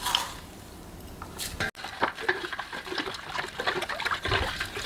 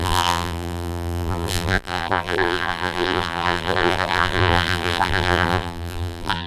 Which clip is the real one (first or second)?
first